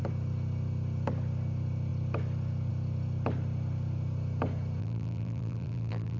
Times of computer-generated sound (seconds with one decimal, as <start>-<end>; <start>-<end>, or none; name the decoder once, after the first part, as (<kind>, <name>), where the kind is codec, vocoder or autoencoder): 4.8-6.2 (vocoder, BigVGAN v2)